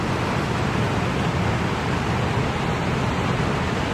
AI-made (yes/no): no